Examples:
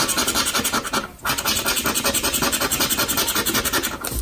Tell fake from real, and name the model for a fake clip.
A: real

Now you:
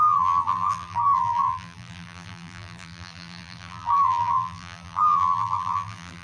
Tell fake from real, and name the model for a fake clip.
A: fake, vocoder, BigVGAN v2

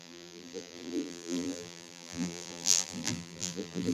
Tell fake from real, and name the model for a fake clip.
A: fake, vocoder, BigVGAN v2